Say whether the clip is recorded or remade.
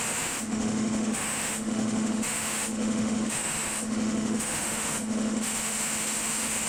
remade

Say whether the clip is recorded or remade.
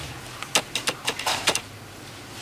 recorded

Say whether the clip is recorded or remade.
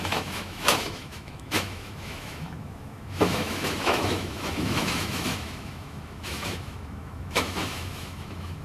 remade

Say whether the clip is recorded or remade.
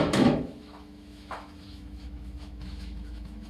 remade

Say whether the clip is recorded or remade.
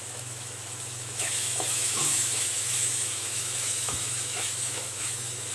remade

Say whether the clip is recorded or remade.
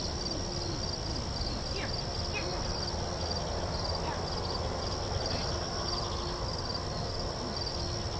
recorded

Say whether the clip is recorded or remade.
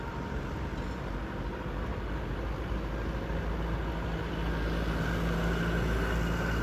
recorded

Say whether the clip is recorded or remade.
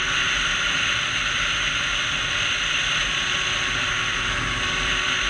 remade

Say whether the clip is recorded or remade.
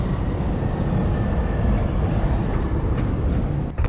recorded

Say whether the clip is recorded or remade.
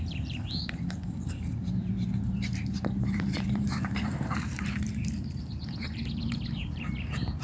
remade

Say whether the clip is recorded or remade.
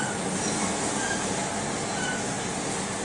recorded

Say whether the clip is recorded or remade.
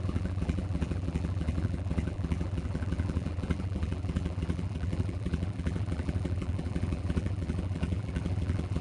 remade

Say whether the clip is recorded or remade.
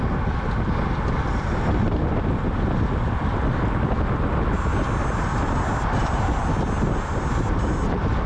recorded